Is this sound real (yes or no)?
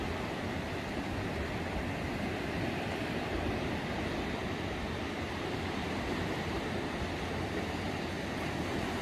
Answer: yes